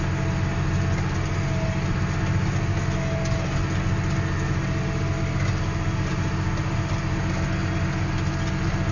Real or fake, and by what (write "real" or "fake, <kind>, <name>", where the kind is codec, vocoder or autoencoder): real